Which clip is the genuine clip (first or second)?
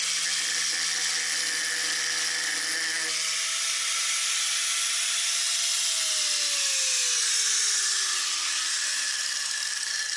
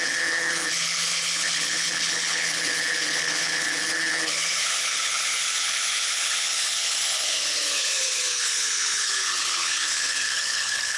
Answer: first